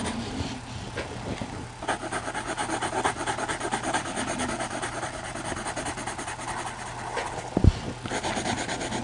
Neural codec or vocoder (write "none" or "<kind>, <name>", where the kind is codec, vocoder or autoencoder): none